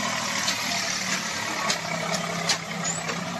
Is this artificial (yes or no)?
no